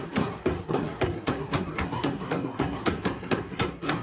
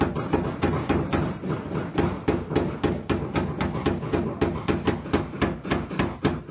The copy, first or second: first